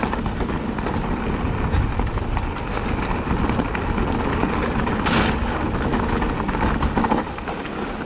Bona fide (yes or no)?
yes